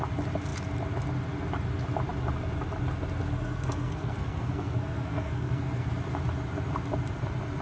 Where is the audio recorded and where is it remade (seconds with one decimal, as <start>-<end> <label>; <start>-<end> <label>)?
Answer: 0.0-3.3 recorded; 3.3-5.9 remade; 5.9-7.6 recorded